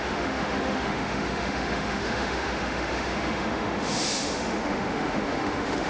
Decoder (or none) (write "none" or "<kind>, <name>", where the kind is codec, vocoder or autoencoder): autoencoder, DAC-VAE